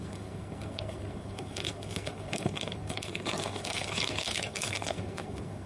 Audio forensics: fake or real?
fake